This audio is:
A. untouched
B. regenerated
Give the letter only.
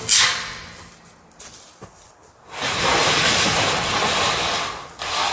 A